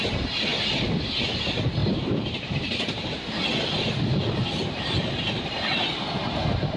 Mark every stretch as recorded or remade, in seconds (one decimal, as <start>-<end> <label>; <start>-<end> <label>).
0.0-0.5 recorded; 0.5-1.3 remade; 1.3-1.8 recorded; 1.8-4.3 remade; 4.3-6.8 recorded